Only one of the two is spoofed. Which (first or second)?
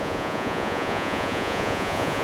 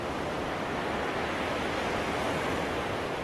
first